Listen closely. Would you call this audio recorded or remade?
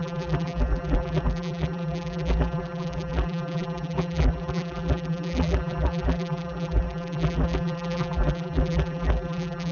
remade